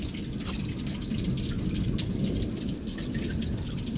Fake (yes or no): no